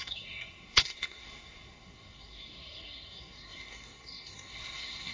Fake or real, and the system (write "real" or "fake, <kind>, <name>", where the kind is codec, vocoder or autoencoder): fake, codec, SNAC